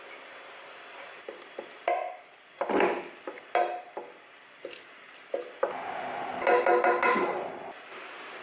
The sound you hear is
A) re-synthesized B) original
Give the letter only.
B